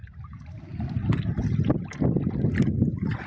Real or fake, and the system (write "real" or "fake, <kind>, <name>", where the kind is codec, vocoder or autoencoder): real